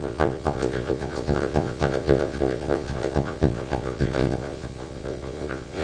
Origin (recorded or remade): remade